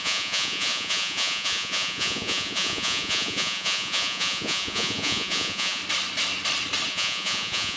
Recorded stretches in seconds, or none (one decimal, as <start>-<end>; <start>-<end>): 5.8-6.9